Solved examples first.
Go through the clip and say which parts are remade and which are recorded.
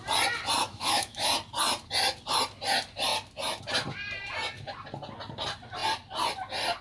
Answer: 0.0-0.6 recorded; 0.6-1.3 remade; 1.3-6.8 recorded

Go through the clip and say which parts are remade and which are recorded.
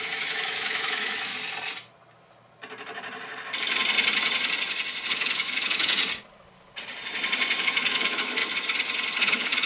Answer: 0.0-1.3 remade; 1.3-5.1 recorded; 5.1-6.0 remade; 6.0-7.6 recorded; 7.6-8.4 remade; 8.4-9.2 recorded; 9.2-9.7 remade